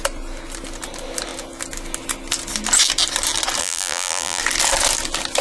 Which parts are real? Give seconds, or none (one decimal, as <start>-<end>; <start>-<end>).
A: 0.0-3.6; 4.4-5.4